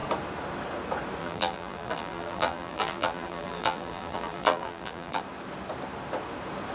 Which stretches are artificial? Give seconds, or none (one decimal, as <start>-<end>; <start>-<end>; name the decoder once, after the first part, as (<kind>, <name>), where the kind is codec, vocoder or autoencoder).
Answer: 1.2-5.2 (vocoder, BigVGAN v2)